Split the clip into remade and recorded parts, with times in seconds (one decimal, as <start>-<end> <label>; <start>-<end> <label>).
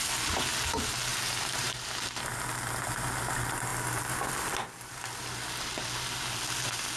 0.0-1.1 recorded; 1.1-1.8 remade; 1.8-7.0 recorded